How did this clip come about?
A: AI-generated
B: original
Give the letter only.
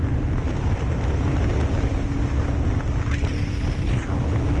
B